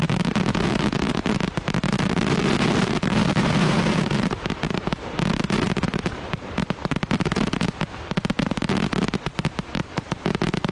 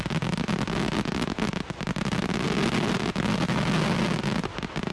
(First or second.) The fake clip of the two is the first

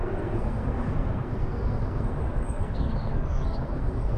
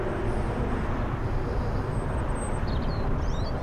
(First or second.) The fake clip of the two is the first